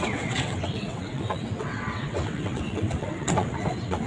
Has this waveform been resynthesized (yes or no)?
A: yes